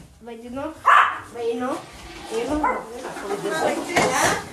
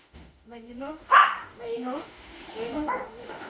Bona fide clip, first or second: first